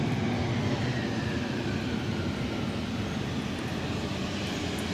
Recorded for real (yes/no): yes